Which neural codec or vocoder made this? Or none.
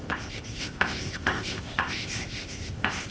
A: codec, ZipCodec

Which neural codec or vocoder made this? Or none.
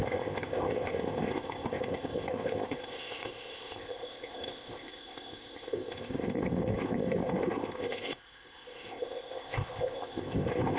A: codec, ZipCodec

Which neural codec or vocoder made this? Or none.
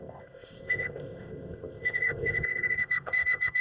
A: codec, ZipCodec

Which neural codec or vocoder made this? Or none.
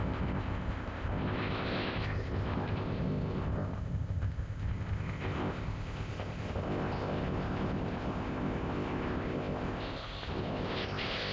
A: codec, ZipCodec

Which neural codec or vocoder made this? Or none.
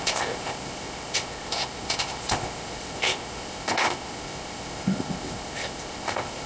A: codec, ZipCodec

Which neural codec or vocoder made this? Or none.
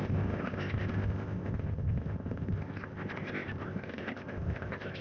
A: codec, ZipCodec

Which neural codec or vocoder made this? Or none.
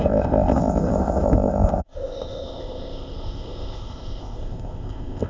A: codec, ZipCodec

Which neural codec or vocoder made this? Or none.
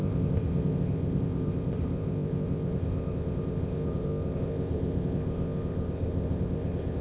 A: codec, ZipCodec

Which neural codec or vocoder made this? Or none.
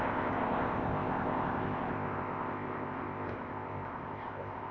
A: codec, ZipCodec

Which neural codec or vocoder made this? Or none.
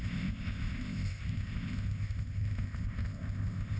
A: codec, ZipCodec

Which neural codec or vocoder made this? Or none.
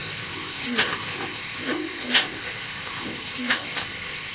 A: codec, ZipCodec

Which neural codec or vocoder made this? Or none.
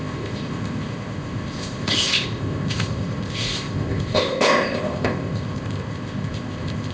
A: codec, ZipCodec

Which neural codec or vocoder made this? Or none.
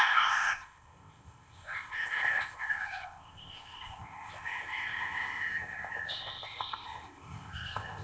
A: codec, ZipCodec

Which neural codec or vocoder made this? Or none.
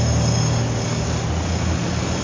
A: none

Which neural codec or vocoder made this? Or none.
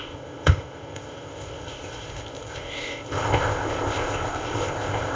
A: codec, ZipCodec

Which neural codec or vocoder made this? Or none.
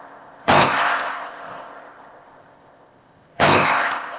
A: codec, ZipCodec